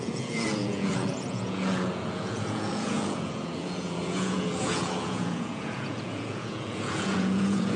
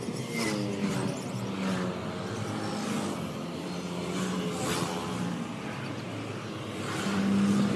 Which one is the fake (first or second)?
first